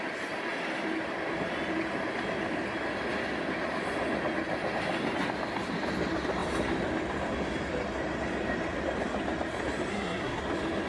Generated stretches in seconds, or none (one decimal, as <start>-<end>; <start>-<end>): 9.9-10.4